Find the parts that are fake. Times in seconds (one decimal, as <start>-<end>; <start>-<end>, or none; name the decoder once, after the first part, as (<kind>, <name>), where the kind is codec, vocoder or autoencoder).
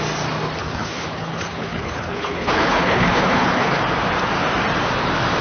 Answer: 0.6-3.8 (codec, HILCodec)